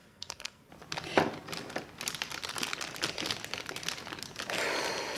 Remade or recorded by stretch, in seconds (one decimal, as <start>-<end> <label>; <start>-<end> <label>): 0.0-0.7 remade; 0.7-5.2 recorded